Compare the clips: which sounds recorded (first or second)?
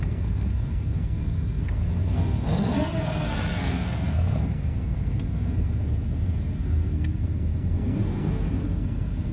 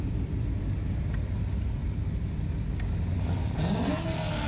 second